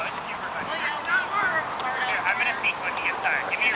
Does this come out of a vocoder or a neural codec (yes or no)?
no